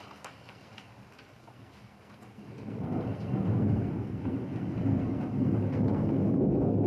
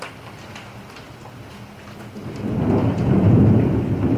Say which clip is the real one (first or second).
second